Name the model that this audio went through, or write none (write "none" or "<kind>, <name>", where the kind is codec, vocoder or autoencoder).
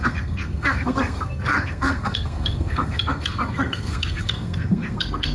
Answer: codec, SNAC